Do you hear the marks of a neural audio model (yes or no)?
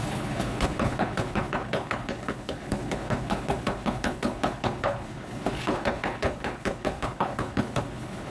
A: yes